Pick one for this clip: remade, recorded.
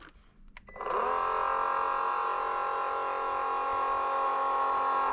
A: recorded